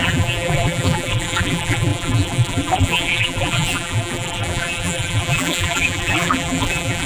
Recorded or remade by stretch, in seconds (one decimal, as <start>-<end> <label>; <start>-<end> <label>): 0.0-7.1 remade